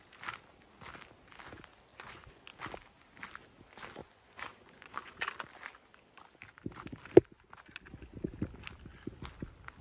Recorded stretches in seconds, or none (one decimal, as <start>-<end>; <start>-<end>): 0.0-1.9; 2.4-4.0; 5.2-9.8